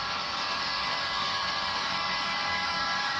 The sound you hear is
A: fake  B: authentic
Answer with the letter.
A